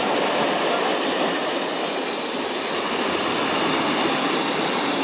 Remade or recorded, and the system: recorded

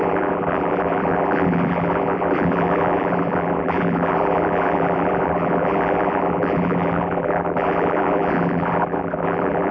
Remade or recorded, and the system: remade, vocoder, BigVGAN v2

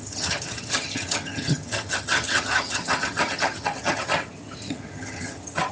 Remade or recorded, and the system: remade, vocoder, HiFi-GAN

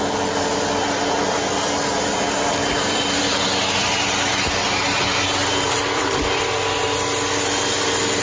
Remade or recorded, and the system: recorded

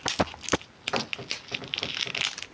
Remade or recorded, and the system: recorded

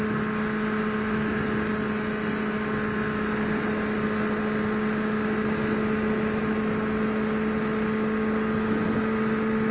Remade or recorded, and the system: recorded